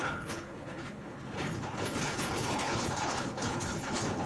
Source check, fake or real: fake